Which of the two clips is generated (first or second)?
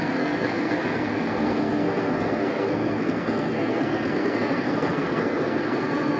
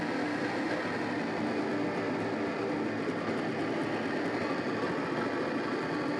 first